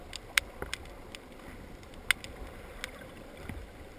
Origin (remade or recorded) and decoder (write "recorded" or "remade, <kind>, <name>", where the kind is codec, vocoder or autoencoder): recorded